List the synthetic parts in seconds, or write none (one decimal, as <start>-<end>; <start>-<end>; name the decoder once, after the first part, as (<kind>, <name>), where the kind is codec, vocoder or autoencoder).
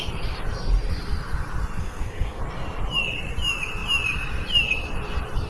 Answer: 1.8-2.4 (codec, SNAC)